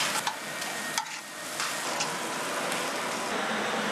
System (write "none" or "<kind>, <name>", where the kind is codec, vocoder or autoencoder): none